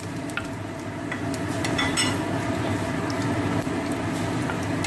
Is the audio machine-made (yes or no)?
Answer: no